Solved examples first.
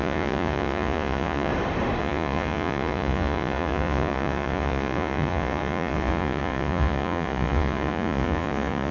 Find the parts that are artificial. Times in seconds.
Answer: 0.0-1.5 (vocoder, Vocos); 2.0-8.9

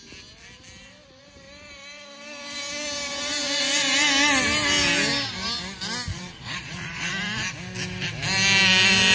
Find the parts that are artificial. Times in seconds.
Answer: 6.1-7.1 (vocoder, Vocos)

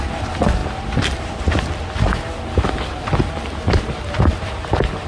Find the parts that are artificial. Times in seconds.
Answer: none

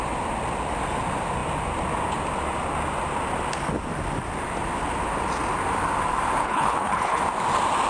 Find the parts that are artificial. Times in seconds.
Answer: 6.4-7.2 (codec, HILCodec)

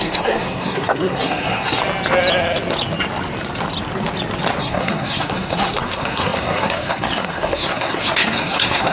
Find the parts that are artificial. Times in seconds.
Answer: 0.0-1.8 (codec, SNAC); 4.6-8.9

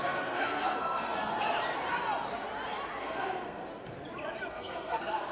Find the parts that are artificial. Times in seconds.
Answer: 0.0-1.3 (codec, SNAC); 3.0-3.6; 4.5-5.3

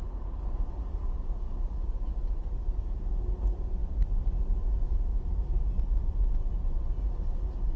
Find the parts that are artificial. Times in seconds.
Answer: none